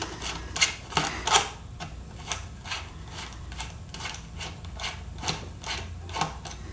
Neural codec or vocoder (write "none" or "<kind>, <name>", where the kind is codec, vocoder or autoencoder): none